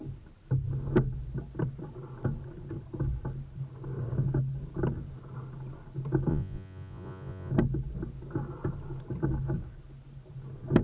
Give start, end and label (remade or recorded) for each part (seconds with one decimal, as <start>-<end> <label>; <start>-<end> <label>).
0.0-6.3 recorded; 6.3-7.5 remade; 7.5-10.8 recorded